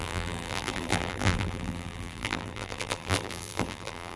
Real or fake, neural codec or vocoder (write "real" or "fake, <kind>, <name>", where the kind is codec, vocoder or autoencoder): fake, vocoder, BigVGAN v2